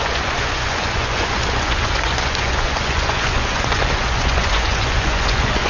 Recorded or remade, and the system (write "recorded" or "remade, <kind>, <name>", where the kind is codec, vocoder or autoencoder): remade, vocoder, Vocos